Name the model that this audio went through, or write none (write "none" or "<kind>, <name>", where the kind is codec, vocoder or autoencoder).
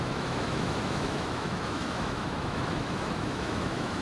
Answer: autoencoder, DAC-VAE